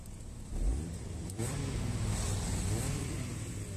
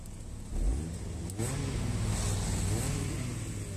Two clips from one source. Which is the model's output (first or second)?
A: first